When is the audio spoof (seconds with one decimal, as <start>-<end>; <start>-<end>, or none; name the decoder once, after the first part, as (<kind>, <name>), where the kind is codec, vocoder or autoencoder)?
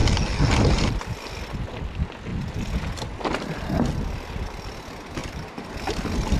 5.2-5.7 (vocoder, BigVGAN v2)